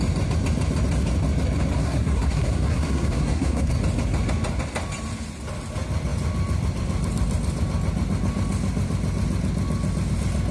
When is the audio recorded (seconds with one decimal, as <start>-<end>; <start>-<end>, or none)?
0.0-1.8; 3.7-10.5